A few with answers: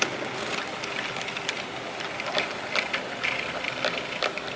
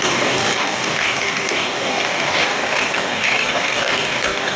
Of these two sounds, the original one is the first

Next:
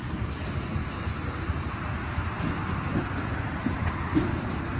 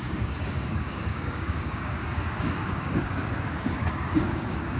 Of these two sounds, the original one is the first